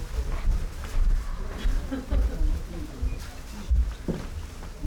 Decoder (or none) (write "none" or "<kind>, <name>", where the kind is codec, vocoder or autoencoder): none